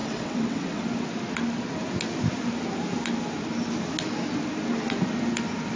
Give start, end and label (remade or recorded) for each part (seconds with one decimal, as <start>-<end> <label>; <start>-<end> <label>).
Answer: 0.0-0.8 remade; 0.8-5.8 recorded

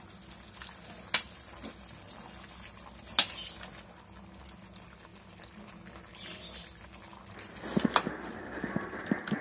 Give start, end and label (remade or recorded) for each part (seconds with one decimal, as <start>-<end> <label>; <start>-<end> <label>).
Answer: 0.0-9.4 recorded